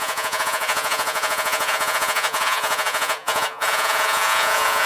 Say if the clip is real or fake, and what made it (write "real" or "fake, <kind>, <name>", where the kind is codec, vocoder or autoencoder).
fake, vocoder, Vocos